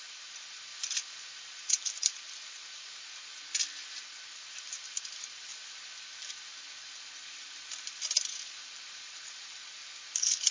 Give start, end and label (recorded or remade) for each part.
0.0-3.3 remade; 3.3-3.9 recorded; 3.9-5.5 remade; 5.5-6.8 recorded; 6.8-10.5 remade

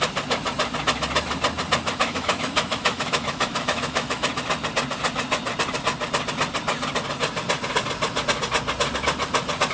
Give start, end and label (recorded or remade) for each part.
0.0-2.0 recorded; 2.0-4.3 remade; 4.3-9.7 recorded

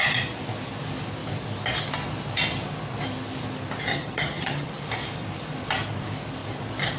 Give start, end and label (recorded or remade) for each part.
0.0-3.9 recorded; 3.9-4.7 remade; 4.7-7.0 recorded

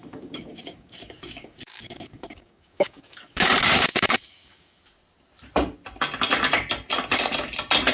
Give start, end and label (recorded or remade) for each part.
0.0-3.5 remade; 3.5-3.9 recorded; 3.9-4.8 remade; 4.8-7.9 recorded

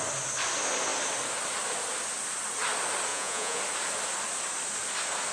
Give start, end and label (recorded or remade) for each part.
0.0-3.1 recorded; 3.1-3.6 remade; 3.6-5.3 recorded

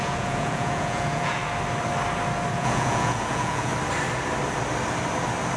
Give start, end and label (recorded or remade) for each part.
0.0-1.4 remade; 1.4-2.5 recorded; 2.5-3.7 remade; 3.7-5.6 recorded

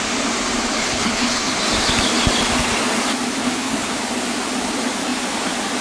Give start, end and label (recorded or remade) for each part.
0.0-0.8 recorded; 0.8-1.6 remade; 1.6-3.4 recorded; 3.4-4.0 remade; 4.0-5.8 recorded